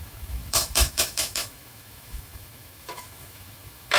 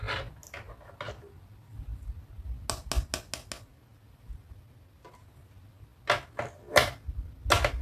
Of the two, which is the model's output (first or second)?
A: first